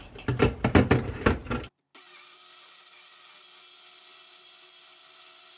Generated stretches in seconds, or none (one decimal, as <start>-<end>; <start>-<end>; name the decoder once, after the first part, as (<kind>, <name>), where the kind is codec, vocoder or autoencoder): 0.0-1.4 (vocoder, BigVGAN v2); 4.3-5.6